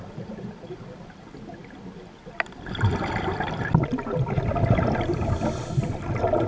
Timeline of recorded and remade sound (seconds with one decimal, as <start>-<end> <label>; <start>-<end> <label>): 0.0-6.5 recorded